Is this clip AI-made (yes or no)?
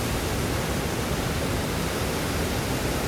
no